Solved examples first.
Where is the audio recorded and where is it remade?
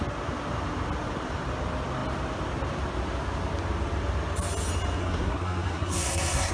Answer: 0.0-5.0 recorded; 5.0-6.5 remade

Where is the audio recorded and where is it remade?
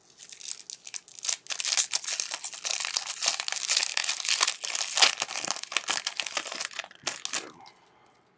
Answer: 0.0-4.0 recorded; 4.0-4.8 remade; 4.8-8.4 recorded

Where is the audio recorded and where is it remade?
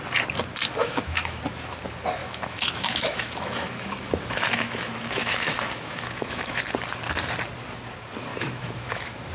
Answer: 0.0-0.8 recorded; 0.8-1.4 remade; 1.4-2.2 recorded; 2.2-6.6 remade; 6.6-8.3 recorded; 8.3-9.3 remade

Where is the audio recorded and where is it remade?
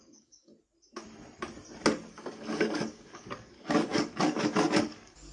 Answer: 0.0-0.5 remade; 0.5-2.1 recorded; 2.1-5.3 remade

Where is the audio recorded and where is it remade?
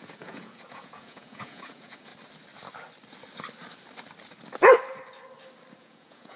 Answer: 0.0-2.1 remade; 2.1-5.8 recorded; 5.8-6.4 remade